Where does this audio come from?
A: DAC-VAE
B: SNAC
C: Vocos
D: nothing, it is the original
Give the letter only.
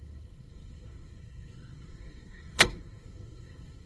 B